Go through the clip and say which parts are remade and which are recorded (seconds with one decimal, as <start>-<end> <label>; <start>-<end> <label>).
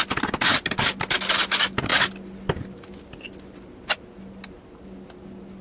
0.0-5.6 recorded